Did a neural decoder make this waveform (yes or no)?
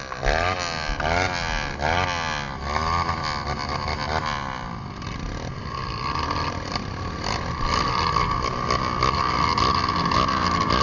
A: no